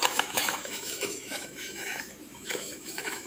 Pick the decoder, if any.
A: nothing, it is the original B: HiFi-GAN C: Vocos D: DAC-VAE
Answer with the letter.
D